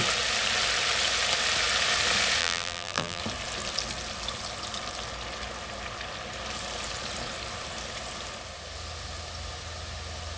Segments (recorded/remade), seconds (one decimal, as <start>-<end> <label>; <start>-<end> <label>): 0.0-2.4 recorded; 2.4-3.2 remade; 3.2-10.4 recorded